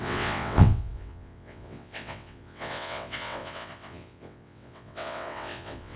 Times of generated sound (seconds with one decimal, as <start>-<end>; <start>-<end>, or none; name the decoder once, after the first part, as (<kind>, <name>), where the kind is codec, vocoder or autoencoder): 0.0-6.0 (vocoder, WaveNeXt)